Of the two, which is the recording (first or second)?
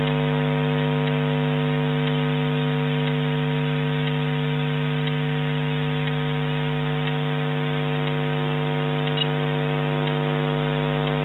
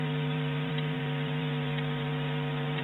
first